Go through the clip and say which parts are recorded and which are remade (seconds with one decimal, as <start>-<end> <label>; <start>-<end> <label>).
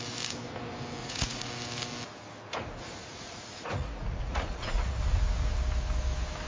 0.0-1.0 recorded; 1.0-1.5 remade; 1.5-3.0 recorded; 3.0-5.0 remade; 5.0-6.5 recorded